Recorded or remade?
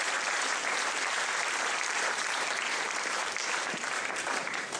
remade